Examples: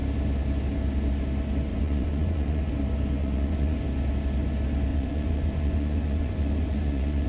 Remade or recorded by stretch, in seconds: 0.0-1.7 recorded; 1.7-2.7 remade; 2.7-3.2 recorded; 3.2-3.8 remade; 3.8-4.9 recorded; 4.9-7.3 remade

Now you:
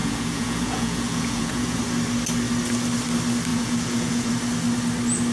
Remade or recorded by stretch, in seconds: 0.0-1.8 remade; 1.8-3.5 recorded; 3.5-4.3 remade; 4.3-5.3 recorded

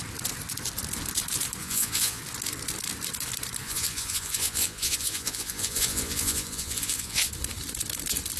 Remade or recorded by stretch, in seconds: 0.0-1.6 recorded; 1.6-2.2 remade; 2.2-3.6 recorded; 3.6-7.3 remade; 7.3-8.4 recorded

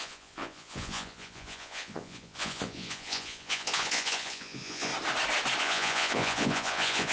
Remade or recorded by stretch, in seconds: 0.0-4.9 remade; 4.9-5.6 recorded; 5.6-7.1 remade